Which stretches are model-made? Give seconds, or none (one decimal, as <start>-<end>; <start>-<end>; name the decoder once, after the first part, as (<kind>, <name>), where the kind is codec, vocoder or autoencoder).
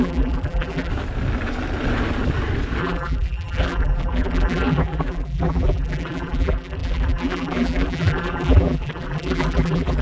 0.0-0.9 (vocoder, BigVGAN v2); 2.8-10.0